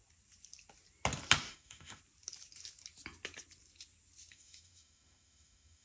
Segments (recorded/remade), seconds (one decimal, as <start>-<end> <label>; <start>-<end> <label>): 0.0-1.5 recorded; 1.5-2.0 remade; 2.0-4.3 recorded; 4.3-5.8 remade